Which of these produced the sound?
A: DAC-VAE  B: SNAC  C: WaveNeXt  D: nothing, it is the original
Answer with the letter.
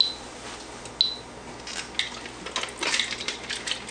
D